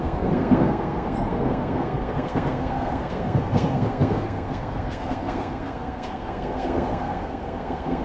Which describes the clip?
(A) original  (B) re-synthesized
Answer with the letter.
B